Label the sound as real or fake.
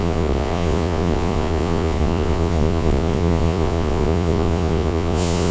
fake